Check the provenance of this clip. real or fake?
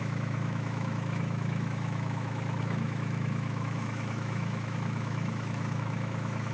fake